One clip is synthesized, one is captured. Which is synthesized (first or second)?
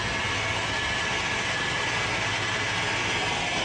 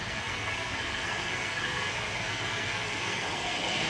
second